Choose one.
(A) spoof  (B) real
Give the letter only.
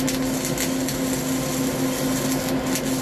B